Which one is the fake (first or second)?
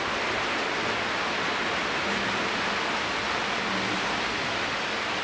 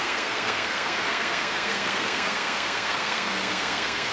second